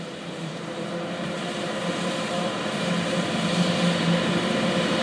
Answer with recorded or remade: remade